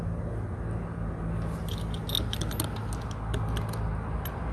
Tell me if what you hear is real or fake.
real